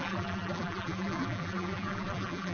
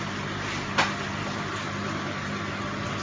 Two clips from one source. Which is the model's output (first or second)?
first